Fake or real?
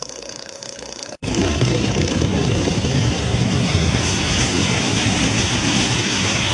fake